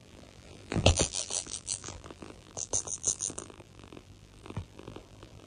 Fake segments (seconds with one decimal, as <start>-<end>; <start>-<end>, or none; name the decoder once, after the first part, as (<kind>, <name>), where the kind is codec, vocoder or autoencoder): 0.0-5.5 (vocoder, BigVGAN v2)